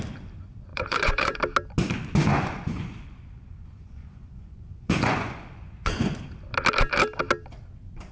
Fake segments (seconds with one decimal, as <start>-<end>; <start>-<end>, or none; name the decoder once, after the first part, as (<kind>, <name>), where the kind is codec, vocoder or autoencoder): 0.7-1.4 (vocoder, Vocos); 2.3-6.2